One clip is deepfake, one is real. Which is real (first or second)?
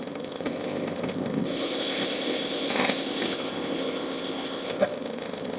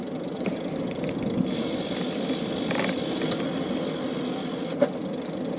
second